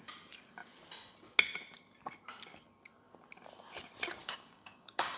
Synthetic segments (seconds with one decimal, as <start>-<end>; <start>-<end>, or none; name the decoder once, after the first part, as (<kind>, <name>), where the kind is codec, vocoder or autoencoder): 4.2-5.2 (codec, DAC)